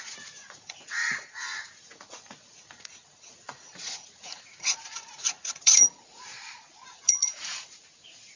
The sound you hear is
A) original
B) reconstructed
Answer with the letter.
B